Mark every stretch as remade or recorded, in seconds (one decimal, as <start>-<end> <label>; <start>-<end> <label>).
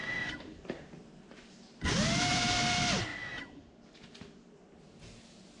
0.0-2.4 remade; 2.4-5.6 recorded